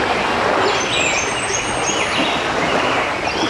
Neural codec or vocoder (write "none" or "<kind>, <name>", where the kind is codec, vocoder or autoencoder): none